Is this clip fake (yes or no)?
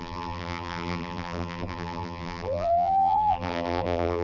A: yes